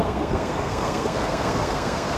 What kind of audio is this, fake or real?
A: fake